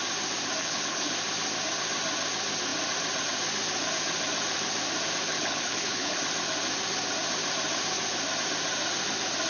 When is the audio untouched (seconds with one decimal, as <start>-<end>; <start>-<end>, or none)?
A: 0.0-0.6; 1.1-5.3; 6.2-9.5